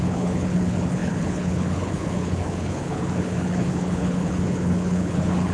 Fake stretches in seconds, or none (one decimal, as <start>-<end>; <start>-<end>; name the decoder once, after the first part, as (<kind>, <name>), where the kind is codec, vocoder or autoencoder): 0.0-5.5 (codec, HILCodec)